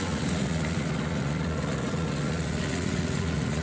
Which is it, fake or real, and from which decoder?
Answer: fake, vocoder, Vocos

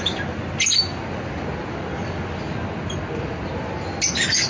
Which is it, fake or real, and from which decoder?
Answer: real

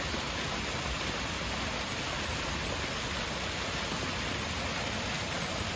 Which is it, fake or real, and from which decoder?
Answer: real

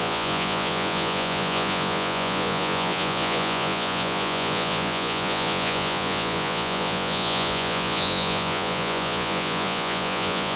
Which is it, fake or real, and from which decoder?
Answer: fake, vocoder, Vocos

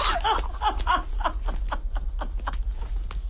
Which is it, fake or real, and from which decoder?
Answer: real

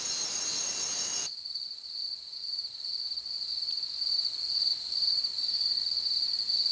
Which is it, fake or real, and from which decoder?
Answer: real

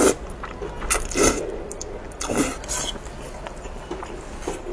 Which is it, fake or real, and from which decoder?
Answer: real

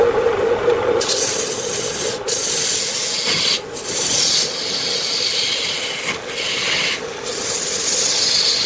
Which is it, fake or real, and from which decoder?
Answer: real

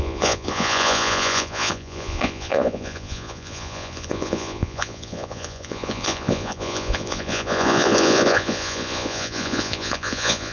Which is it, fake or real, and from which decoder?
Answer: fake, vocoder, Vocos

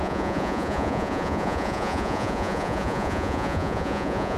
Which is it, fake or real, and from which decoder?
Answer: fake, vocoder, Vocos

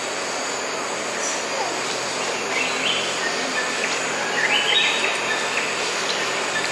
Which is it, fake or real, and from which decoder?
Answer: real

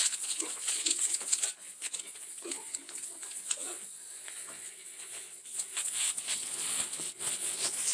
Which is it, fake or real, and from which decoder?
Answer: fake, vocoder, Vocos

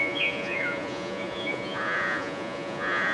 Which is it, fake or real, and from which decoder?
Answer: fake, vocoder, Vocos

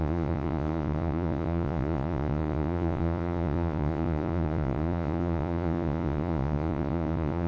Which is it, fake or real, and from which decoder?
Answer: fake, vocoder, Vocos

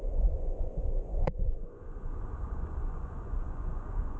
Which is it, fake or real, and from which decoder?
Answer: fake, vocoder, Vocos